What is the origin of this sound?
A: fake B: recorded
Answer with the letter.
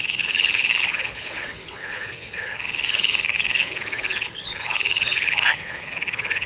A